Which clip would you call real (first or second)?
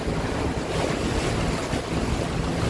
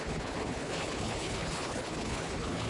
first